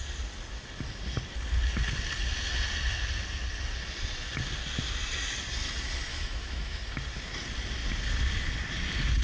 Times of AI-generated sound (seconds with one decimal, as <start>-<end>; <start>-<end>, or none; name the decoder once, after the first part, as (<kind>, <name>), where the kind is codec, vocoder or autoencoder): 6.1-6.8 (autoencoder, DAC-VAE)